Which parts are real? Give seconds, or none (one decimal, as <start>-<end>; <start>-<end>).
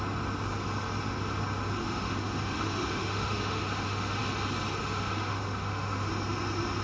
0.0-1.8; 4.2-4.8; 6.1-6.8